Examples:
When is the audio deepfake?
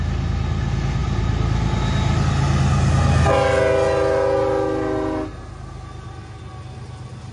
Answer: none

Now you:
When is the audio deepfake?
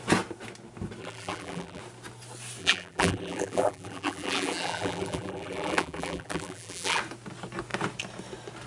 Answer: 1.0-1.8 (vocoder, BigVGAN v2); 2.6-7.0